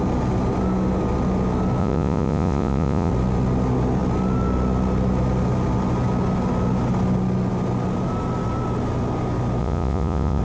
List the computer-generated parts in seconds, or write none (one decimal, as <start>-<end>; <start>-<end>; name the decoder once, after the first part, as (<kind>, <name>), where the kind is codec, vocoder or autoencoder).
1.8-3.1 (vocoder, Vocos); 9.6-10.4